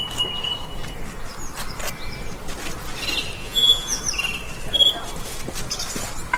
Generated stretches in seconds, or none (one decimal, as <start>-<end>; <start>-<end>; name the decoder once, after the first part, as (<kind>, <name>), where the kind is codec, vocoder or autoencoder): 3.4-4.0 (vocoder, Vocos)